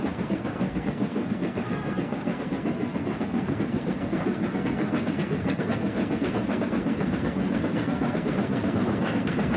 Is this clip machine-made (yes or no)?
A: yes